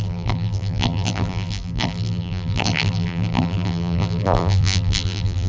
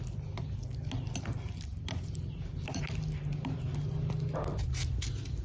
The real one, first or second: second